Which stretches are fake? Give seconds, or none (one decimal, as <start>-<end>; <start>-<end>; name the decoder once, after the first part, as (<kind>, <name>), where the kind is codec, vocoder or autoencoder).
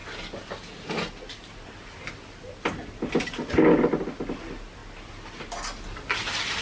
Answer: none